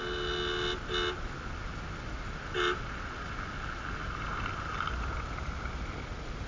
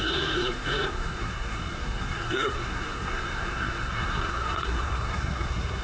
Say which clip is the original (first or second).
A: first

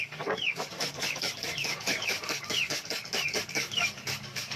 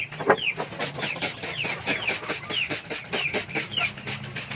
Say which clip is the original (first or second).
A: second